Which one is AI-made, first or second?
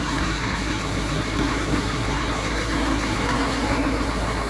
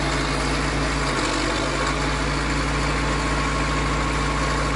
first